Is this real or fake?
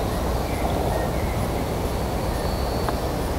real